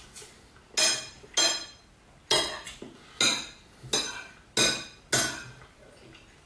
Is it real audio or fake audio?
real